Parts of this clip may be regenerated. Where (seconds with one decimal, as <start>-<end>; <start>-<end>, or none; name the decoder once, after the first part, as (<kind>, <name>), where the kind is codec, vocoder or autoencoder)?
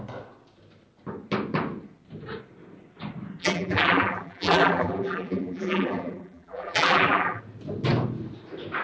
3.4-7.4 (vocoder, BigVGAN v2)